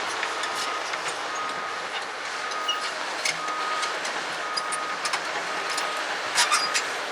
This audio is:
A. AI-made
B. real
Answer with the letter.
B